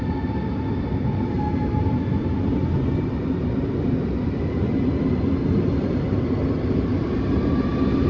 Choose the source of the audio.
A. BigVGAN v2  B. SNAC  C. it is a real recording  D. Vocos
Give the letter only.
C